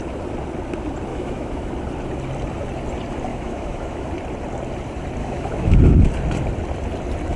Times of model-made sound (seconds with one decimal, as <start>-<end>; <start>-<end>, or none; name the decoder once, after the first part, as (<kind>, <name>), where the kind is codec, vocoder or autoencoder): 1.1-1.7 (autoencoder, DAC-VAE); 3.3-4.1; 5.2-5.8